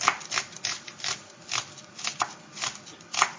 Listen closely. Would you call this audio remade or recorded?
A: recorded